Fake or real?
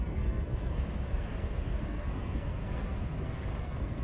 fake